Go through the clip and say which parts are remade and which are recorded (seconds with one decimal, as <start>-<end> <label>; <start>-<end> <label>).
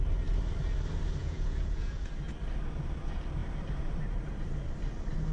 0.0-1.2 recorded; 1.2-2.1 remade; 2.1-5.3 recorded